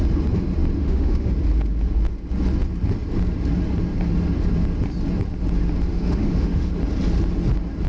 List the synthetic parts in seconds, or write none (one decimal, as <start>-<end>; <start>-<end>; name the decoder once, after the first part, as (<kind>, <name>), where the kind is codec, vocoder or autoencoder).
0.8-1.3 (autoencoder, DAC-VAE); 5.9-6.7